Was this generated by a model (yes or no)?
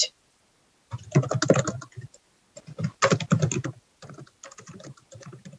no